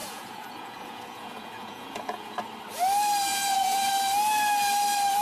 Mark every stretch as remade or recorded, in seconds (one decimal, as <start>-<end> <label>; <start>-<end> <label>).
0.0-2.4 remade; 2.4-3.3 recorded; 3.3-3.9 remade; 3.9-5.2 recorded